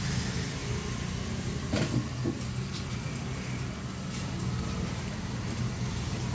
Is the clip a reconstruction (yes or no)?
no